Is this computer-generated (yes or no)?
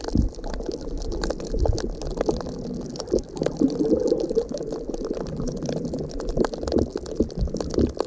no